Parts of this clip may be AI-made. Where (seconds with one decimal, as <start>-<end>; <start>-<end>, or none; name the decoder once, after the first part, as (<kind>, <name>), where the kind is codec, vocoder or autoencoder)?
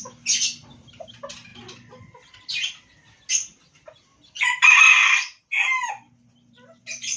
none